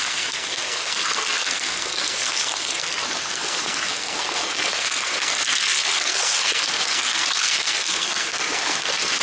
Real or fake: fake